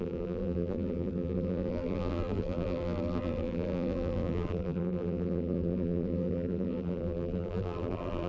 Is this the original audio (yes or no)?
no